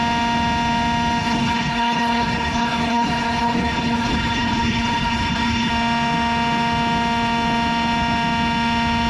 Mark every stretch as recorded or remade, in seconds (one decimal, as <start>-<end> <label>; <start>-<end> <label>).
0.0-1.2 recorded; 1.2-5.7 remade; 5.7-9.1 recorded

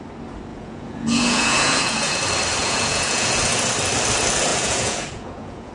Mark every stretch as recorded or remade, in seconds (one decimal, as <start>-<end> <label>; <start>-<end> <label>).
0.0-0.5 recorded; 0.5-2.2 remade; 2.2-2.6 recorded; 2.6-3.4 remade; 3.4-4.5 recorded; 4.5-5.7 remade

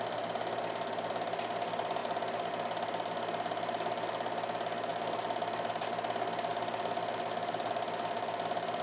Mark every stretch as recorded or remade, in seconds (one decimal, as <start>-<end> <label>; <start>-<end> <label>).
0.0-8.8 recorded

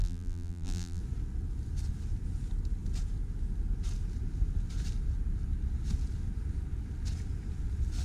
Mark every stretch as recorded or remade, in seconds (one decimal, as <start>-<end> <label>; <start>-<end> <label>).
0.0-1.0 remade; 1.0-8.0 recorded

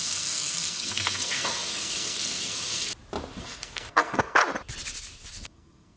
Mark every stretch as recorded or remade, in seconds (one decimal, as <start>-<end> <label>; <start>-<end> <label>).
0.0-2.9 remade; 2.9-3.4 recorded; 3.4-4.4 remade; 4.4-5.3 recorded; 5.3-6.0 remade